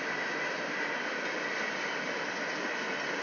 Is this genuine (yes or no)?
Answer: yes